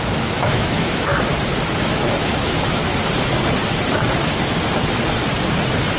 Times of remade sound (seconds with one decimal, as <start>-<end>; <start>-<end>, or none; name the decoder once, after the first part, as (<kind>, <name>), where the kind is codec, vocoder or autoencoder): 0.0-1.1 (autoencoder, DAC-VAE); 1.8-2.8